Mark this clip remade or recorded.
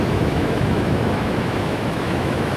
remade